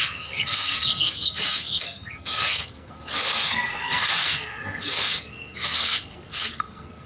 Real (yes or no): no